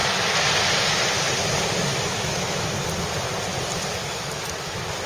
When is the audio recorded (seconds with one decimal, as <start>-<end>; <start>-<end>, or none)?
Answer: 0.0-1.9; 2.7-4.0; 4.5-5.1